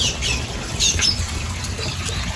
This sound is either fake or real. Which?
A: fake